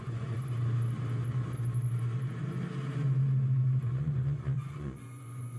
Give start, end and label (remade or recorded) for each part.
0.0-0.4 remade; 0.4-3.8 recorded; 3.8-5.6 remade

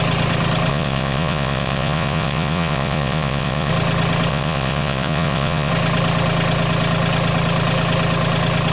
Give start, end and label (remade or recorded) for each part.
0.0-0.7 recorded; 0.7-3.7 remade; 3.7-4.3 recorded; 4.3-5.7 remade; 5.7-8.7 recorded

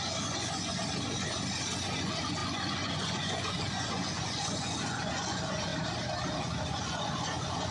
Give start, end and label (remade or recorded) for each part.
0.0-0.8 remade; 0.8-1.8 recorded; 1.8-5.7 remade; 5.7-6.4 recorded; 6.4-7.7 remade

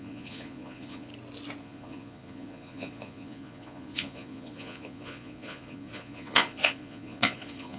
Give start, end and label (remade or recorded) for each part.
0.0-1.1 remade; 1.1-1.6 recorded; 1.6-7.8 remade